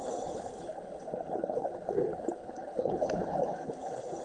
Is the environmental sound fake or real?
fake